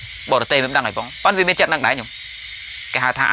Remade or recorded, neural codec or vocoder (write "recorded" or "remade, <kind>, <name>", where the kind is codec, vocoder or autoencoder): recorded